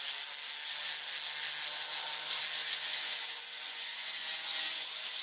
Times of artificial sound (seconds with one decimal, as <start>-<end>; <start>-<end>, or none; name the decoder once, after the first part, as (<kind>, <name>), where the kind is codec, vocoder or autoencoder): 2.6-5.2 (vocoder, Vocos)